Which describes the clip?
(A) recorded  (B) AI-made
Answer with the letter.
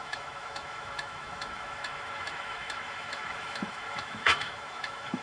B